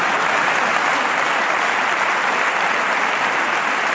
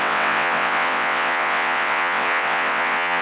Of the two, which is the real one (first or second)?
first